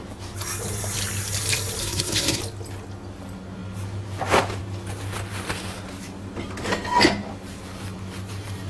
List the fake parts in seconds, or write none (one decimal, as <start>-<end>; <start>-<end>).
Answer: 1.8-2.4